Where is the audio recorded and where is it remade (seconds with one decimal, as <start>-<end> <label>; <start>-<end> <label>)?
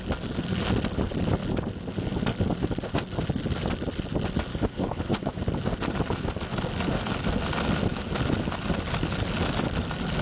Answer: 0.0-4.5 recorded; 4.5-5.4 remade; 5.4-10.2 recorded